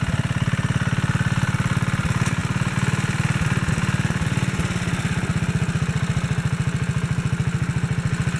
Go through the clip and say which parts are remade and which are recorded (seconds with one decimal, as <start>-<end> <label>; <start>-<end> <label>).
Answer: 0.0-8.4 recorded